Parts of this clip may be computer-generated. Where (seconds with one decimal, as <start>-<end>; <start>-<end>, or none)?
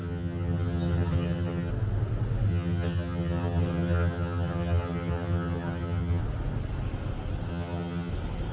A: 0.0-1.7; 2.5-6.2; 7.5-8.1